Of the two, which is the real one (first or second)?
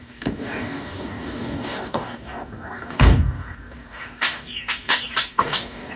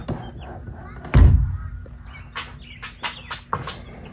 second